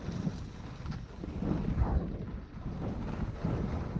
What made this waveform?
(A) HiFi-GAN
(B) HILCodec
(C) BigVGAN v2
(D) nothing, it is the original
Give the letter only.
D